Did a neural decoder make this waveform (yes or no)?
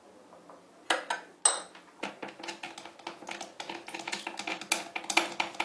no